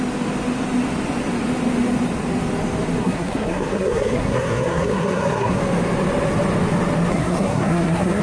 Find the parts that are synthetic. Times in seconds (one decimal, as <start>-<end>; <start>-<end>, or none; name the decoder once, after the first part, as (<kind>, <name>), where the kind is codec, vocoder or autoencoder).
3.0-5.6 (codec, SNAC); 7.1-8.2